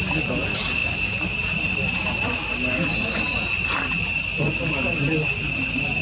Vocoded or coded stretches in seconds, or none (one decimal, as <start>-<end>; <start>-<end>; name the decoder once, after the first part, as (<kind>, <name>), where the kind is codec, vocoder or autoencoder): none